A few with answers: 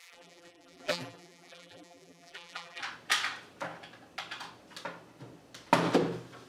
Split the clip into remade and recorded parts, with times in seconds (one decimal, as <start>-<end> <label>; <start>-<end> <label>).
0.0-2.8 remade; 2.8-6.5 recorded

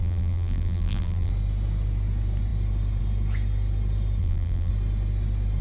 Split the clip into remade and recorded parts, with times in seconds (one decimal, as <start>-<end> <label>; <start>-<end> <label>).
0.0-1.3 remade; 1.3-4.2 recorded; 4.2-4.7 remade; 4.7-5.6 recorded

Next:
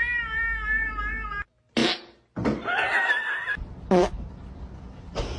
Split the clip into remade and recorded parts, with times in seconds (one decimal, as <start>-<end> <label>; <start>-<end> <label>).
0.0-5.4 recorded

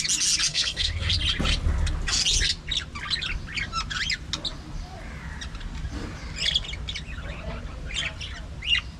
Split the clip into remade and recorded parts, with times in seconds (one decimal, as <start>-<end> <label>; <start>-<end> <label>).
0.0-0.5 recorded; 0.5-1.1 remade; 1.1-9.0 recorded

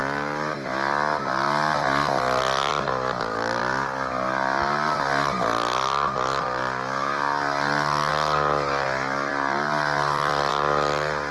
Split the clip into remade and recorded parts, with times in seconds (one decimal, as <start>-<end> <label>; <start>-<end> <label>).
0.0-9.3 recorded; 9.3-10.5 remade; 10.5-11.3 recorded

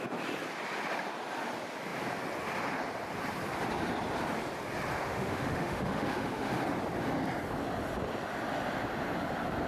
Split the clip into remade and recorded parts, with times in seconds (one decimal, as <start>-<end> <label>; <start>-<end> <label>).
0.0-5.0 recorded; 5.0-6.6 remade; 6.6-9.7 recorded

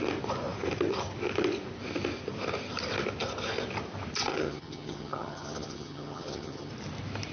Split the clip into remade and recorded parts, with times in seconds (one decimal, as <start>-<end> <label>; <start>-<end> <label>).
0.0-4.3 recorded; 4.3-6.7 remade; 6.7-7.3 recorded